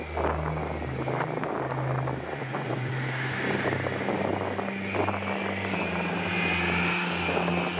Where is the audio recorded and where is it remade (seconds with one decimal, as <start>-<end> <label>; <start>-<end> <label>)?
0.0-2.3 recorded; 2.3-2.9 remade; 2.9-7.8 recorded